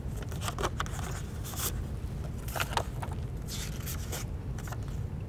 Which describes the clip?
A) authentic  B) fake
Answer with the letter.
A